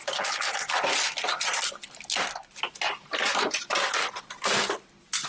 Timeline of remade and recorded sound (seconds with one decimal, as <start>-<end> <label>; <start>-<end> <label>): 0.0-5.3 recorded